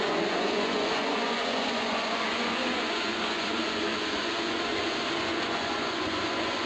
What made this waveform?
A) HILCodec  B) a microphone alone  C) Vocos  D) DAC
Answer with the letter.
C